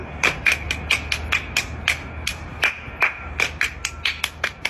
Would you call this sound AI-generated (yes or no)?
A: no